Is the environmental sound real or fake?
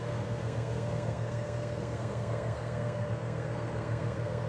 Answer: fake